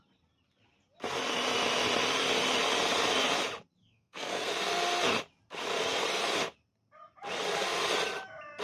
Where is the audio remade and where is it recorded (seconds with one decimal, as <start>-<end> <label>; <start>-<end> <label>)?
0.0-3.8 recorded; 3.8-4.5 remade; 4.5-8.6 recorded